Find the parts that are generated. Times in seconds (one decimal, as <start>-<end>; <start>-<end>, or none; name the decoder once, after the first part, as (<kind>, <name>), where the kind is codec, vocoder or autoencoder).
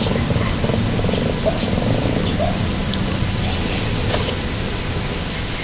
none